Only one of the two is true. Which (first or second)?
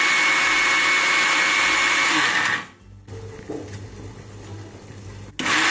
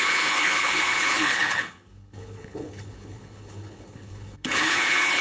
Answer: first